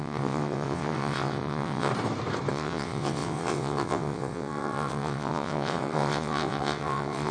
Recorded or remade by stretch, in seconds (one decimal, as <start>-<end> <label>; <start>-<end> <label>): 0.0-1.9 remade; 1.9-2.5 recorded; 2.5-7.3 remade

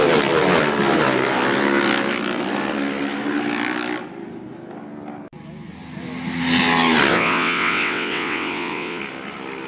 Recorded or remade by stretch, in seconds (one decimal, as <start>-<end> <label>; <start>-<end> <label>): 0.0-7.1 recorded; 7.1-9.0 remade; 9.0-9.7 recorded

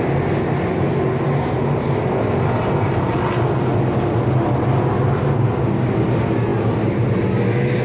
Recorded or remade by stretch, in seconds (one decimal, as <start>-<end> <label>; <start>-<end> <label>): 0.0-7.8 recorded

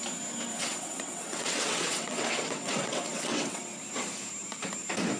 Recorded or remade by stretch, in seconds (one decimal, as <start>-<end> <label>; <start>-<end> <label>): 0.0-0.5 recorded; 0.5-3.6 remade; 3.6-5.2 recorded